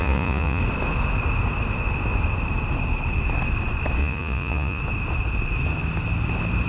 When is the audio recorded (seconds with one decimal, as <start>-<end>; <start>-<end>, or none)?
0.6-4.0; 4.8-6.7